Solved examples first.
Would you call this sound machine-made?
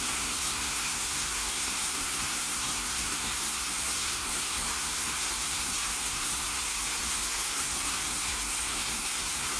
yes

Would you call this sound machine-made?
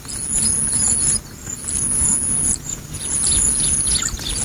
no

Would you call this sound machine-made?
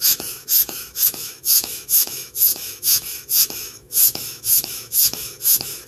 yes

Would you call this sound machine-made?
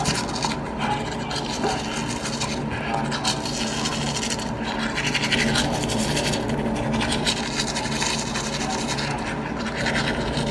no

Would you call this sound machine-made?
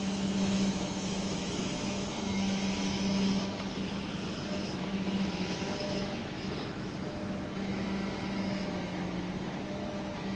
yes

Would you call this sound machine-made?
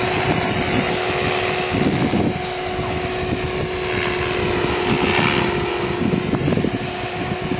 no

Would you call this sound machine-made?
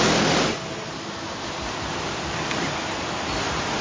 no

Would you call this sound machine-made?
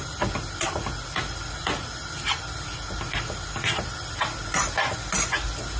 no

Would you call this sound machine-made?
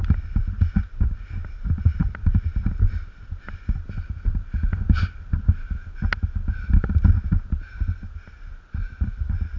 no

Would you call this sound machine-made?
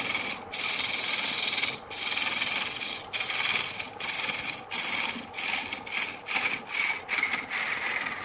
no